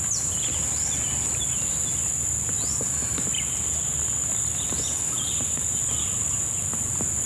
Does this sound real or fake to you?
real